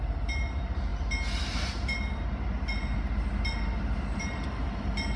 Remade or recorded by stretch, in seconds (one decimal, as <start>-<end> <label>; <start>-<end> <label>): 0.0-5.2 recorded